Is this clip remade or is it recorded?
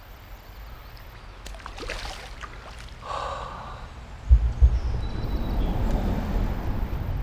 recorded